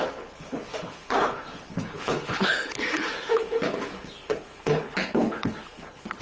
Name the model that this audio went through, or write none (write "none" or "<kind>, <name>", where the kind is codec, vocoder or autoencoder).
codec, HILCodec